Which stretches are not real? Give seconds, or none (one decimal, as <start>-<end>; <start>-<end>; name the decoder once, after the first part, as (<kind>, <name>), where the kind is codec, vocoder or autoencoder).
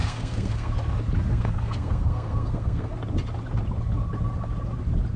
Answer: 0.0-0.7 (codec, SNAC); 1.3-2.9